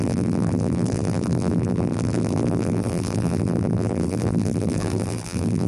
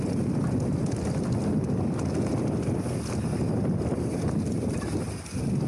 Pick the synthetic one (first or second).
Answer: first